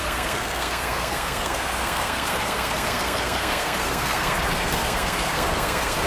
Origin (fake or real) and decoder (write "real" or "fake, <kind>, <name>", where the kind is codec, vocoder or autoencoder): fake, codec, SNAC